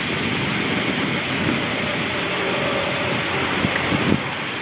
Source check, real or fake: real